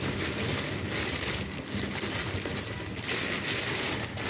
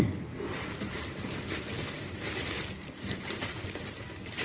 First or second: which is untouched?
first